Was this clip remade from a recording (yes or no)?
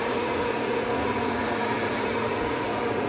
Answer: yes